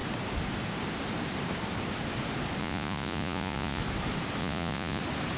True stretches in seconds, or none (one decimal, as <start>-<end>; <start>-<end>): 0.0-2.6; 3.8-4.4; 5.0-5.4